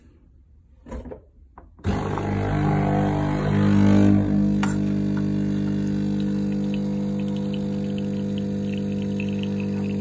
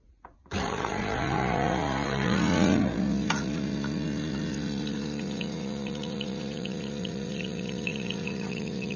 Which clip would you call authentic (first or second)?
first